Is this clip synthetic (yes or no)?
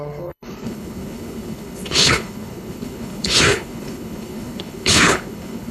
yes